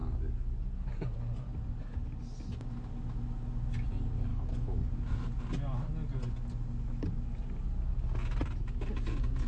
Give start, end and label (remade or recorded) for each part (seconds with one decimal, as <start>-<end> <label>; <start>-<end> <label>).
0.0-4.3 recorded; 4.3-4.9 remade; 4.9-9.5 recorded